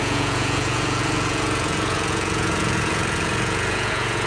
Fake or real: fake